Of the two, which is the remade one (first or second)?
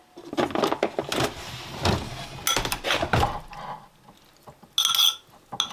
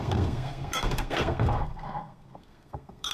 second